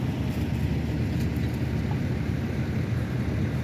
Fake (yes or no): no